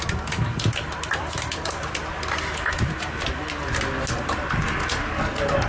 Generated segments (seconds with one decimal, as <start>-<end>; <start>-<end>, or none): 0.9-2.0

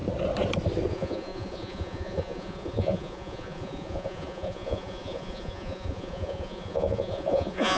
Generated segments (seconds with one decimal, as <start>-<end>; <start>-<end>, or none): 0.9-7.8

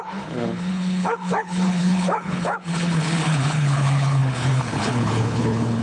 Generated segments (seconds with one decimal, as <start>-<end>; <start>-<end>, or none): 0.0-5.8

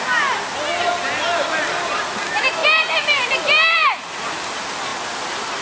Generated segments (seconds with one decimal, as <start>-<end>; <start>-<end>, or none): none

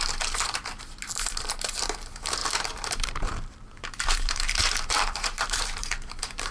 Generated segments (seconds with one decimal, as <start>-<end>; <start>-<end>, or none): 2.4-6.5